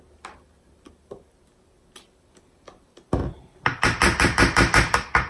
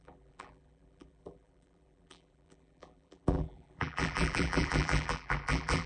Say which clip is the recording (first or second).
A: first